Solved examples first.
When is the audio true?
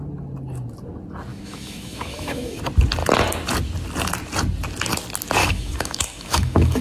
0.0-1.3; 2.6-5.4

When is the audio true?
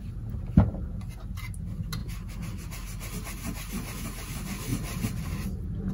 0.0-5.9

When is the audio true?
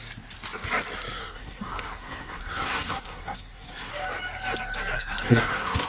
0.0-1.2; 3.9-4.9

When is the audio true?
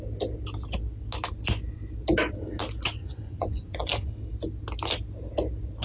0.0-3.0; 4.1-5.8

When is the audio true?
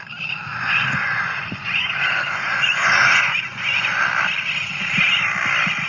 0.0-0.5; 4.0-5.9